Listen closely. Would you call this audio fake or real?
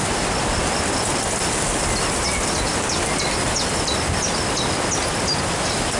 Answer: real